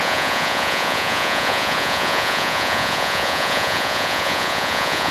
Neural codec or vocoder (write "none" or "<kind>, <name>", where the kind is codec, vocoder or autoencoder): vocoder, Vocos